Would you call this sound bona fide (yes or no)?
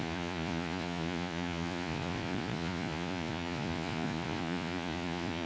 no